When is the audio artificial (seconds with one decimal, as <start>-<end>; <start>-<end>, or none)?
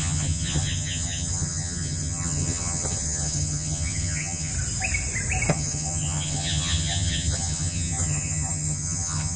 0.0-4.5; 5.5-9.4